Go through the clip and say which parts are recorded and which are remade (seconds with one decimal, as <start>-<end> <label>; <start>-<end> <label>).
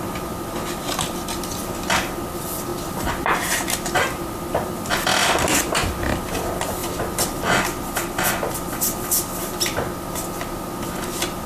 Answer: 0.0-2.7 recorded; 2.7-5.9 remade; 5.9-6.8 recorded; 6.8-7.3 remade; 7.3-11.5 recorded